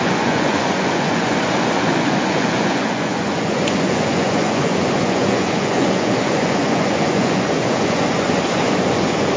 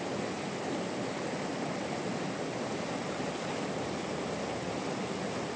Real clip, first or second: second